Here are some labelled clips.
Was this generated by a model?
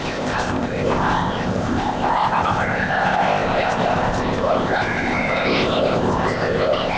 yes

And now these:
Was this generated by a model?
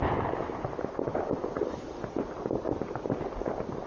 no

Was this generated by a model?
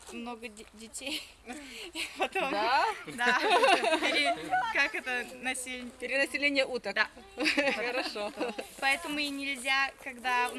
no